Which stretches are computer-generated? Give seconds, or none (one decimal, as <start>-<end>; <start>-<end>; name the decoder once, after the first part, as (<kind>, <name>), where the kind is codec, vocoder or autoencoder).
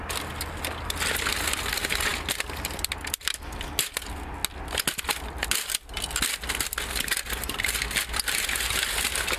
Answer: none